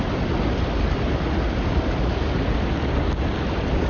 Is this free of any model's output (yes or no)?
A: yes